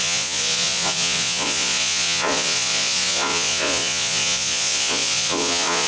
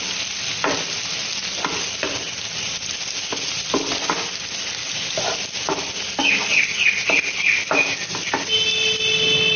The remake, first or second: first